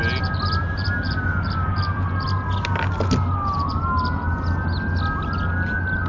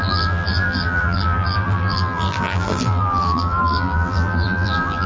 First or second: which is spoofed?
second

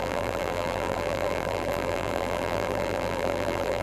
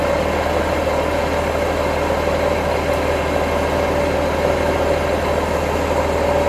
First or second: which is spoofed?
first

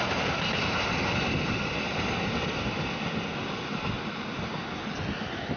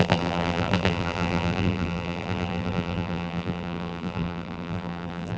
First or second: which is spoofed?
second